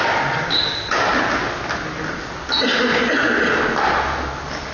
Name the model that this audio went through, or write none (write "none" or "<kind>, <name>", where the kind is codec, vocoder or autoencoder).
none